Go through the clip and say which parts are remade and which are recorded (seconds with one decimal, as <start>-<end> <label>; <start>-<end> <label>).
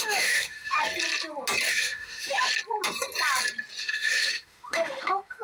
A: 0.0-0.8 remade; 0.8-1.7 recorded; 1.7-2.5 remade; 2.5-3.8 recorded; 3.8-5.4 remade